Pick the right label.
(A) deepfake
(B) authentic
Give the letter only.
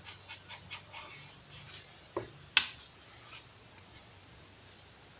B